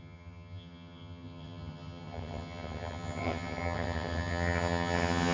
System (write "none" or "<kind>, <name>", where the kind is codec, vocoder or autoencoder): vocoder, HiFi-GAN